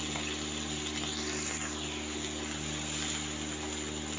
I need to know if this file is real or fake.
real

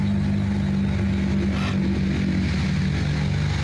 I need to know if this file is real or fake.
real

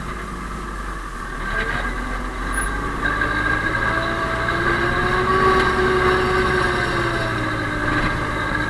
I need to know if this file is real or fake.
real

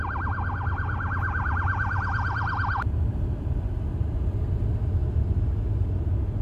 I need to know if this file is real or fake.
real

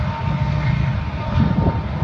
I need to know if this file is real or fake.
real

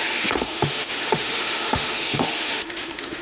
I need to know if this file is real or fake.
fake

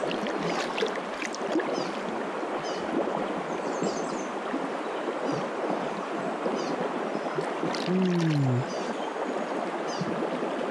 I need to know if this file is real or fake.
real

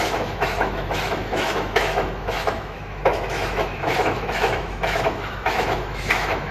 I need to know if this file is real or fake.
fake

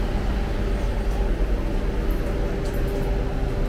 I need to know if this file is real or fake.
real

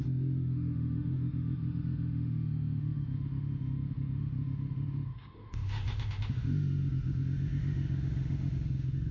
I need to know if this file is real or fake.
fake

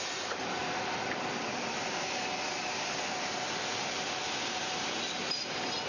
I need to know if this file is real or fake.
real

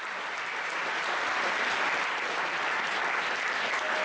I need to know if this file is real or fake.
real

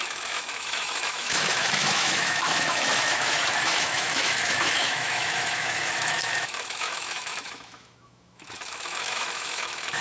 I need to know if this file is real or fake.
fake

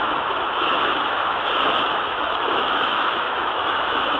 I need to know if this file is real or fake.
fake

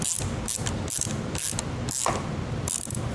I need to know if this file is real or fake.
real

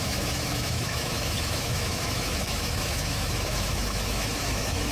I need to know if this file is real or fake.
fake